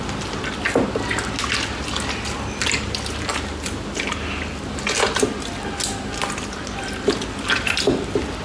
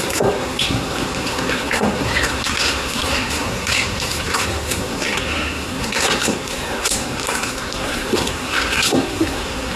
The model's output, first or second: second